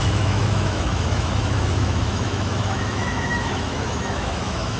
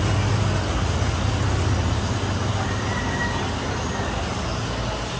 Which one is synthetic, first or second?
first